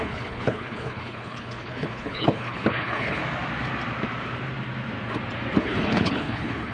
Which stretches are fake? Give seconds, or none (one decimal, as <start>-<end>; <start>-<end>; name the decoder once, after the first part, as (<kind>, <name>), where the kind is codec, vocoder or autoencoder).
0.0-3.2 (codec, HILCodec); 5.6-6.7